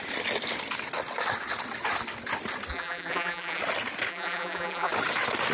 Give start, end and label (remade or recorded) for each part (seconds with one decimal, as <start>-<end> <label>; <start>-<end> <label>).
0.0-2.7 recorded; 2.7-3.6 remade; 3.6-4.1 recorded; 4.1-4.9 remade; 4.9-5.5 recorded